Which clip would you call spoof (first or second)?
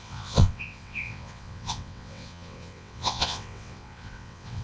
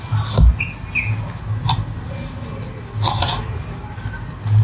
first